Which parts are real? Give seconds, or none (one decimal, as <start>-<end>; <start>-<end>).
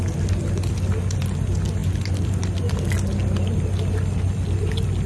0.0-5.1